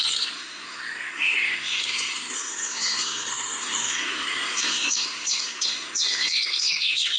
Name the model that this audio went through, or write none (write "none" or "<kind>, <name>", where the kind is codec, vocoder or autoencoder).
codec, SNAC